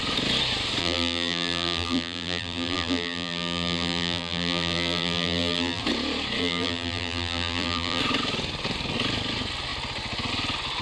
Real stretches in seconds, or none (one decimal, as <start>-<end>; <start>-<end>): 0.0-0.8; 5.8-6.4; 8.0-10.8